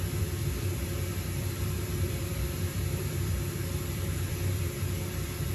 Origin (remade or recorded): remade